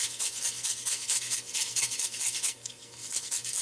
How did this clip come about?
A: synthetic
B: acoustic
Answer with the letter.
A